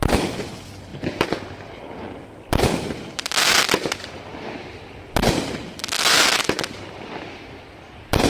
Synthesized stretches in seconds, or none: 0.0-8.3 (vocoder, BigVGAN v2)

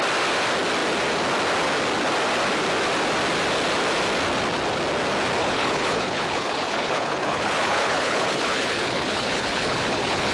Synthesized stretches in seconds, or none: 5.4-10.3 (codec, HILCodec)

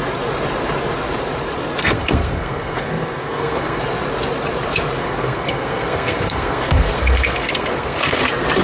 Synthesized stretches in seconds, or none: 1.8-3.8 (codec, SNAC); 5.0-8.2

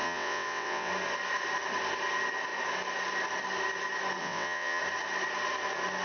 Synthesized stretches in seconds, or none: 0.0-0.9 (vocoder, WaveNeXt); 4.2-4.8

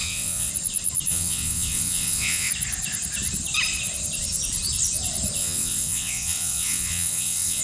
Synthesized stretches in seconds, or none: 0.0-0.5 (vocoder, WaveNeXt); 1.1-2.5; 5.4-7.6

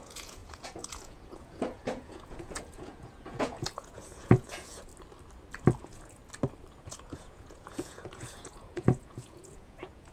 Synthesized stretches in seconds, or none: 0.0-4.9 (vocoder, Vocos); 5.8-6.2; 6.7-10.1

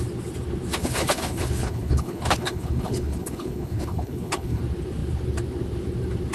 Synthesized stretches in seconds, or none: 0.8-4.6 (codec, HILCodec)

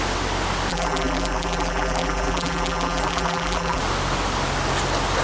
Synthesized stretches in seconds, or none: 0.7-3.8 (vocoder, BigVGAN v2)